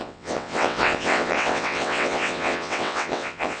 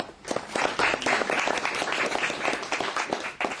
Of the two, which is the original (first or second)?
second